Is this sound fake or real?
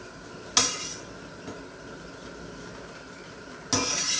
real